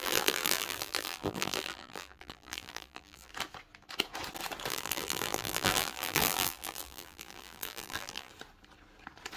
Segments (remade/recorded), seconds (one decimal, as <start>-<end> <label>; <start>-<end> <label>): 0.0-3.3 remade; 3.3-4.7 recorded; 4.7-8.3 remade; 8.3-9.4 recorded